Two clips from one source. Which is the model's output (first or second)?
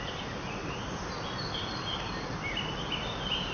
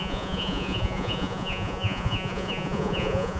second